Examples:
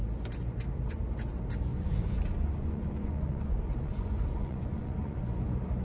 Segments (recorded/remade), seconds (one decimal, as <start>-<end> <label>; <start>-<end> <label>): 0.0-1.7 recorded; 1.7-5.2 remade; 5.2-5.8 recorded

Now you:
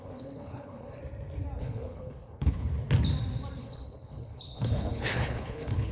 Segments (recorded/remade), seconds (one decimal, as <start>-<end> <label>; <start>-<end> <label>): 0.0-1.0 remade; 1.0-1.6 recorded; 1.6-2.7 remade; 2.7-3.6 recorded; 3.6-5.9 remade

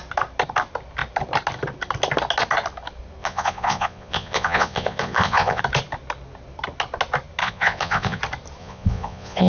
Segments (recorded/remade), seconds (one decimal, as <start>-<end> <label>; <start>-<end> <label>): 0.0-3.2 recorded; 3.2-5.6 remade; 5.6-7.4 recorded; 7.4-8.2 remade; 8.2-8.6 recorded; 8.6-9.5 remade

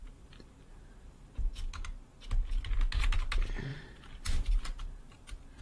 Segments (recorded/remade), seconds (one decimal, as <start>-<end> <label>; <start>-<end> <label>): 0.0-1.5 remade; 1.5-3.7 recorded; 3.7-5.6 remade

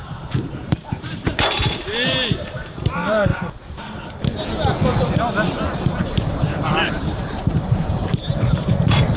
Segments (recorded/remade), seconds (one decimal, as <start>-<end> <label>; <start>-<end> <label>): 0.0-3.3 remade; 3.3-6.0 recorded; 6.0-8.2 remade; 8.2-9.2 recorded

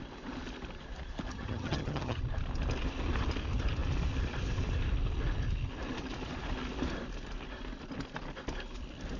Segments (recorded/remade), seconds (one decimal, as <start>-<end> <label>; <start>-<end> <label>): 0.0-1.3 recorded; 1.3-2.2 remade; 2.2-9.2 recorded

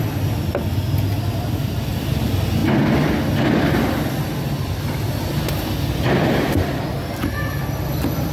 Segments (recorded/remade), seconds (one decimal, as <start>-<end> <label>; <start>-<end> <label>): 0.0-8.3 recorded

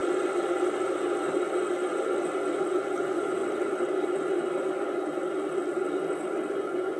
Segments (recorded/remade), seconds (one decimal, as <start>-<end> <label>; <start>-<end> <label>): 0.0-3.0 recorded; 3.0-3.4 remade; 3.4-6.5 recorded; 6.5-7.0 remade